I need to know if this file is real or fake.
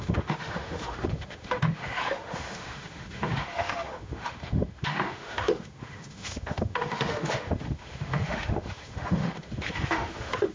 fake